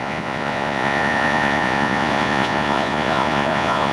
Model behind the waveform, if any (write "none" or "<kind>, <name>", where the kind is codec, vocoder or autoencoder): vocoder, Vocos